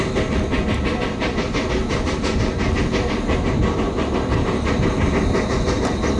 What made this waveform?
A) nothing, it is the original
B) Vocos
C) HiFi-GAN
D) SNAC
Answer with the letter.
A